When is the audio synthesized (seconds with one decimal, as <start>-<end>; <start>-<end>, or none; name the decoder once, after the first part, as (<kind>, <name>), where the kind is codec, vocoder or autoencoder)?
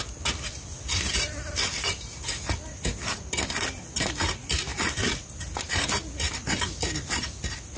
none